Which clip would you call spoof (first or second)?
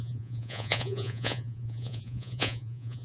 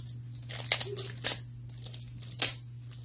first